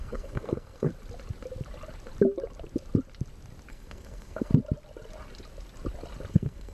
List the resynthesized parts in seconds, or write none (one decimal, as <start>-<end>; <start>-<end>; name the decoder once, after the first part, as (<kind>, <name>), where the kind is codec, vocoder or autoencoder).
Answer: 0.0-0.9 (codec, SNAC); 3.7-4.5; 6.3-6.7